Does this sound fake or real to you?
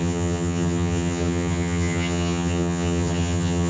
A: fake